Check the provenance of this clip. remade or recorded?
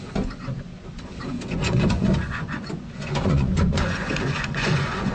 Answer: remade